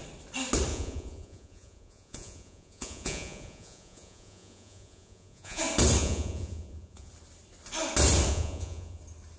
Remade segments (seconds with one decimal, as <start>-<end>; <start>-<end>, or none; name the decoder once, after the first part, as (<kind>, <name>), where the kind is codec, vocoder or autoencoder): 0.7-5.6 (vocoder, Vocos); 6.0-7.1; 8.3-9.0